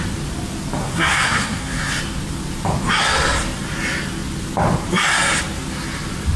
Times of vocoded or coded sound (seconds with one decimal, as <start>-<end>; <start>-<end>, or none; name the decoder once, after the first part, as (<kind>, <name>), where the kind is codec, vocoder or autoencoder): 0.8-2.0 (codec, SNAC)